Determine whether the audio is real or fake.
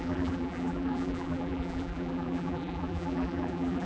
fake